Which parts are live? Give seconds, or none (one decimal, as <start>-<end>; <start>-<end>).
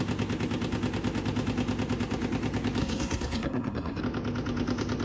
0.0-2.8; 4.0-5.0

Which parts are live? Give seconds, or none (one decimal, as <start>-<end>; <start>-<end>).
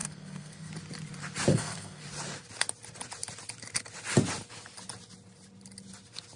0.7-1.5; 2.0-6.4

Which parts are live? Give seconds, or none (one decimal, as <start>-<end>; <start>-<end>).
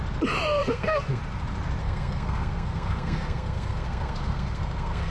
0.0-0.6; 1.2-1.8